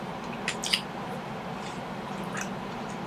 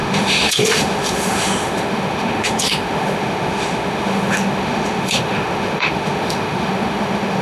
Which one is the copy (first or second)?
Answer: second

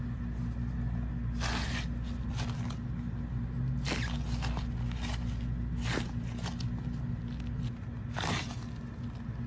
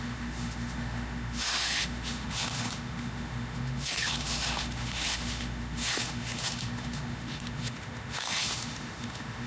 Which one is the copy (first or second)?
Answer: second